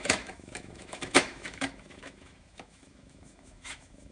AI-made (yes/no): yes